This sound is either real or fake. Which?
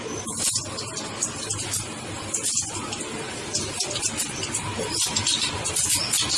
real